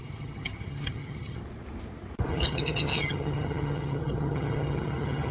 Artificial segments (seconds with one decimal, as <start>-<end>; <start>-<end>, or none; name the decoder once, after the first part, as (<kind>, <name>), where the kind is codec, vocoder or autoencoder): 0.0-1.4 (vocoder, HiFi-GAN); 2.3-5.3